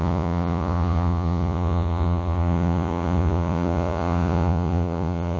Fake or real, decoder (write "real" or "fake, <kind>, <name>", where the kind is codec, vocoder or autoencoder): fake, vocoder, Vocos